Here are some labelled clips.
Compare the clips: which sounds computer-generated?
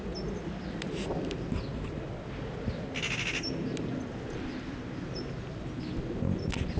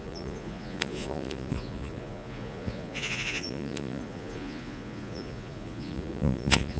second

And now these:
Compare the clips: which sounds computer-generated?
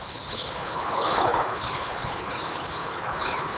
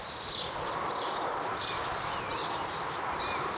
first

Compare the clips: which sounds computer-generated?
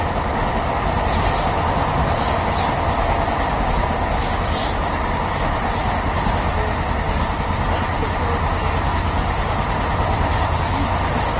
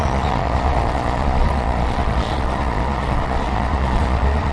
second